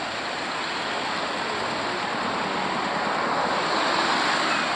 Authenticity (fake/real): real